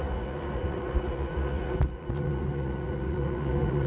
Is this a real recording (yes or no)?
no